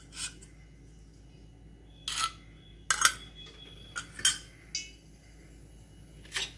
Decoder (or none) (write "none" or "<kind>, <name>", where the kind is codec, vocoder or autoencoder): none